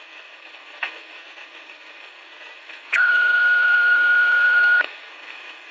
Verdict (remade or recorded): remade